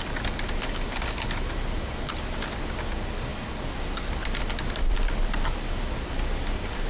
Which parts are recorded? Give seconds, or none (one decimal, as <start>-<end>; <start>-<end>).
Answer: 0.0-6.9